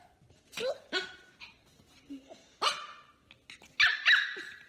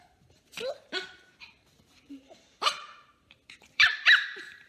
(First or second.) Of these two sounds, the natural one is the first